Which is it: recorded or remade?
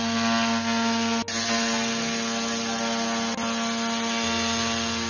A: recorded